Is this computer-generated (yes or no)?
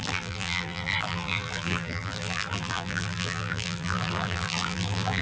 yes